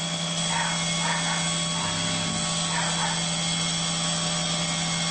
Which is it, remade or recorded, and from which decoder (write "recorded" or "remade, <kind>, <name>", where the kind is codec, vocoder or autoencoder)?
recorded